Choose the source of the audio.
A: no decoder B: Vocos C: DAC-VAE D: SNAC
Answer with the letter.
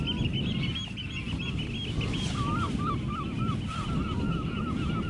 A